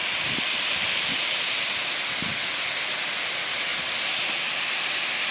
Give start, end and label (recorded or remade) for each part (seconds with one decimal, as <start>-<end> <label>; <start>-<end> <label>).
0.0-5.3 recorded